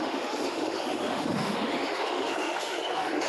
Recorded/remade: remade